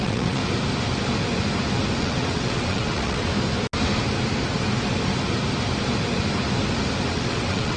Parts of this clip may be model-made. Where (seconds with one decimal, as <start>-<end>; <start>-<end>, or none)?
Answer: 0.0-0.4; 2.0-3.3; 7.1-7.8